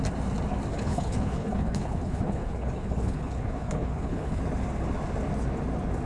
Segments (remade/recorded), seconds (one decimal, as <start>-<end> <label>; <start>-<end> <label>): 0.0-0.7 recorded; 0.7-4.4 remade; 4.4-6.1 recorded